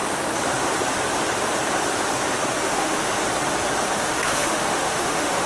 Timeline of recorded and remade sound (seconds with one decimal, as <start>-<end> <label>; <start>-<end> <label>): 0.0-2.6 recorded; 2.6-3.2 remade; 3.2-4.0 recorded; 4.0-5.5 remade